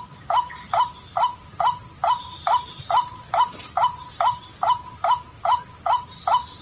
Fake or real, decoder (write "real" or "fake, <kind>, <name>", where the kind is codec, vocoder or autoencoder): real